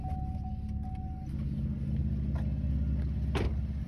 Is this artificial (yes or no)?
no